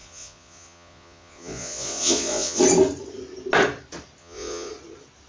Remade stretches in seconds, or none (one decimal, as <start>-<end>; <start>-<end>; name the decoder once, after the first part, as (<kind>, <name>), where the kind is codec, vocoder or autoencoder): 0.0-2.6 (vocoder, Vocos); 4.2-4.7